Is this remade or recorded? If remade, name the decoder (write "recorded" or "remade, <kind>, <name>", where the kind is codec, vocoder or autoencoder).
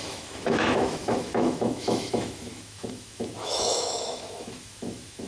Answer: remade, autoencoder, DAC-VAE